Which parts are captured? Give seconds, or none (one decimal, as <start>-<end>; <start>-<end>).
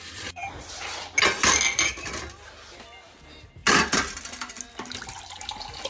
0.0-5.9